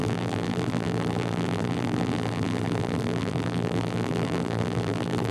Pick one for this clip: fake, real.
fake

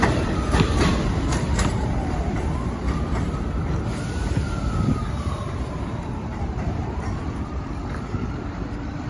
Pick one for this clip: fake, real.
fake